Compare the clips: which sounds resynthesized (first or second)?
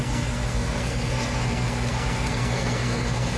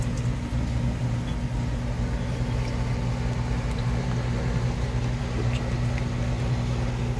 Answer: first